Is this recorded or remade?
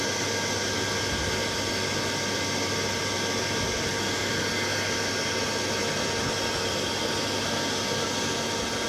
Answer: recorded